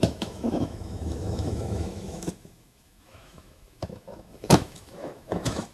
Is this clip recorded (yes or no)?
no